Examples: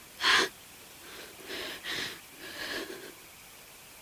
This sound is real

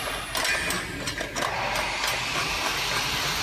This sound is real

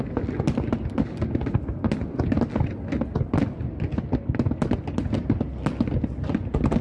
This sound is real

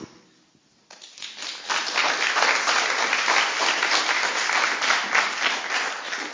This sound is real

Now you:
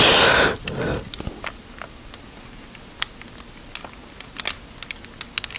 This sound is real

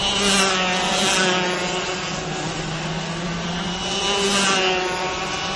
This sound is real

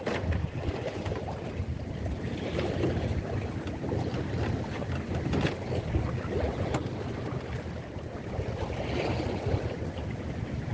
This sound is real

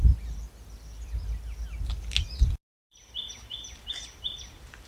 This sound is fake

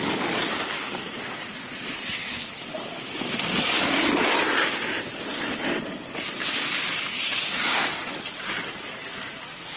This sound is real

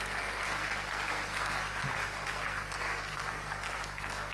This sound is fake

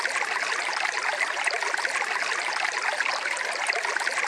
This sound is real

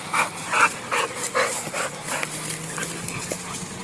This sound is real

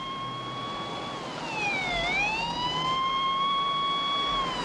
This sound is real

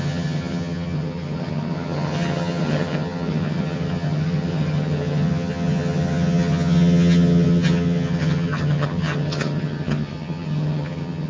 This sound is fake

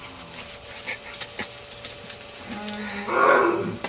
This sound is real